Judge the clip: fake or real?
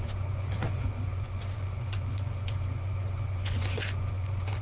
fake